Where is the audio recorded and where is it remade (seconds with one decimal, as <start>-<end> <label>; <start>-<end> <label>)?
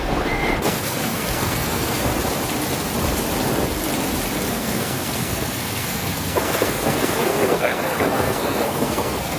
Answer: 0.0-2.1 remade; 2.1-4.5 recorded; 4.5-9.4 remade